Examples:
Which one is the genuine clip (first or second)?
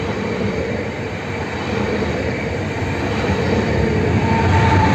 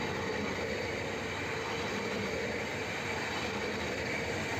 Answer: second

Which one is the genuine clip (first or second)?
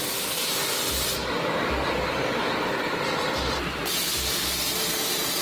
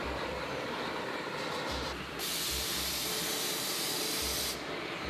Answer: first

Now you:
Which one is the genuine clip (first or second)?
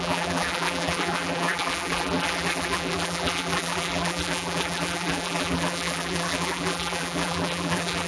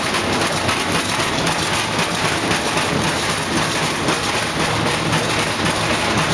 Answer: second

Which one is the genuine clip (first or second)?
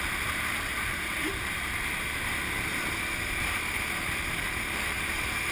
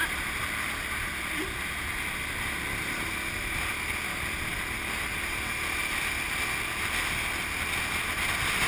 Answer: second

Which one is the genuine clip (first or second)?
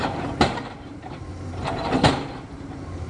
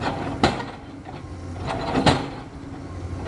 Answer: second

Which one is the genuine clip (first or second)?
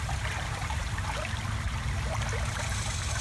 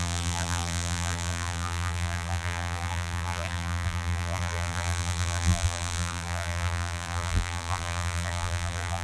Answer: first